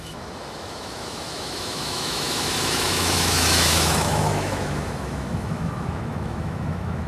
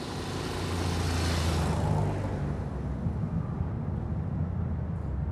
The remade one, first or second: first